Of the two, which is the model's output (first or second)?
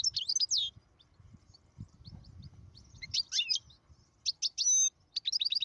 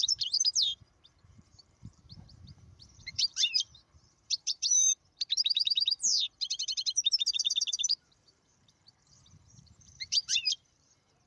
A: second